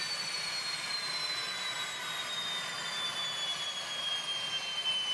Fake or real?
real